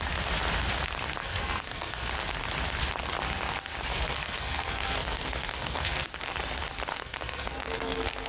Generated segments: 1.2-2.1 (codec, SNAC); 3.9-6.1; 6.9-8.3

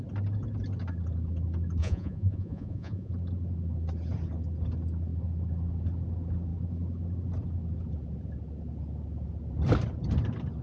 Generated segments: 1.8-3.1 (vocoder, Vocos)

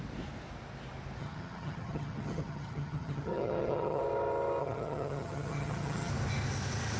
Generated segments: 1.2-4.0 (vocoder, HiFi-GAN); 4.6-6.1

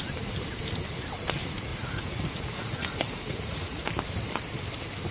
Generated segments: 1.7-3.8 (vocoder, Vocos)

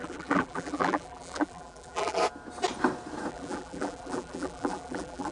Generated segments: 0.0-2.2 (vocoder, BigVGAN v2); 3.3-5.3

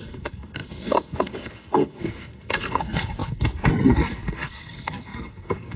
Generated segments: 0.0-5.8 (codec, SNAC)

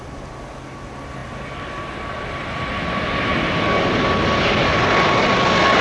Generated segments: none

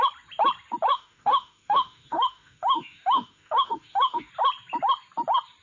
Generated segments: 0.9-4.3 (autoencoder, DAC-VAE)